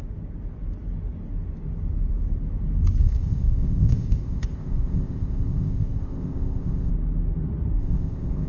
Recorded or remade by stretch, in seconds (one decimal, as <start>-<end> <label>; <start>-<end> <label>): 0.0-3.0 recorded; 3.0-6.9 remade; 6.9-7.8 recorded; 7.8-8.5 remade